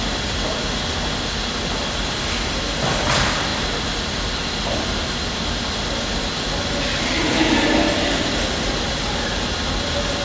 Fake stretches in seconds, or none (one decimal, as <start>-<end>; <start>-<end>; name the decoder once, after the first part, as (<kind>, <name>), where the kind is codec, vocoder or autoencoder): none